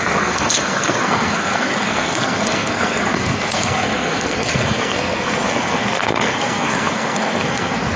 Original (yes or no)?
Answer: no